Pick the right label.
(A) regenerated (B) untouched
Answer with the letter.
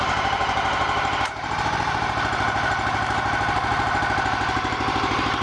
A